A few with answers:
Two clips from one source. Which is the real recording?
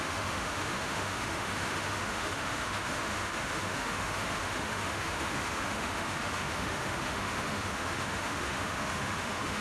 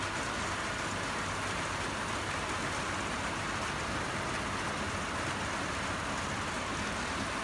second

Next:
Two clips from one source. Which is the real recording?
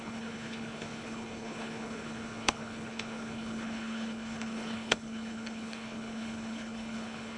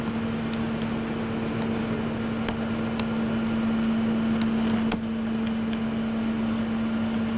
second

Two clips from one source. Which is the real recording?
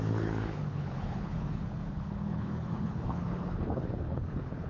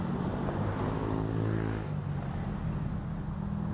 second